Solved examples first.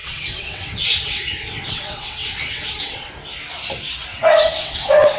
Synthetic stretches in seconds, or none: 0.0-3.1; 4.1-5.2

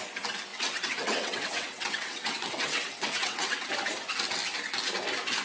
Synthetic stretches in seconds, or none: 0.5-3.7